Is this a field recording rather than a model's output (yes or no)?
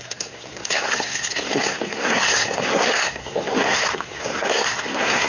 no